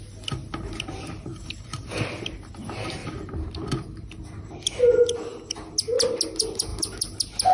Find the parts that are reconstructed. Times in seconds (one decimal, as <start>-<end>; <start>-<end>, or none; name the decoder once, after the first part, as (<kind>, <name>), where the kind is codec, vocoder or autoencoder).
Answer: 1.3-2.5 (vocoder, BigVGAN v2); 3.0-3.5